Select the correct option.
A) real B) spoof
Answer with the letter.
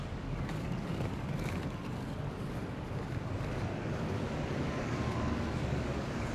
B